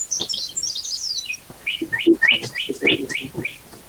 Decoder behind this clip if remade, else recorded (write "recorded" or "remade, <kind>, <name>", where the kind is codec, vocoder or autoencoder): remade, vocoder, BigVGAN v2